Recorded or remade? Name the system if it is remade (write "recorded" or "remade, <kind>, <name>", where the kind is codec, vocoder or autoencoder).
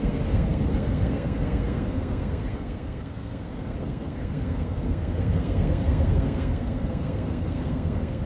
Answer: remade, codec, SNAC